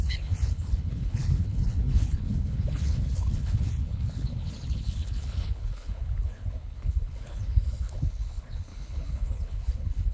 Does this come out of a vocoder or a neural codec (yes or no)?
yes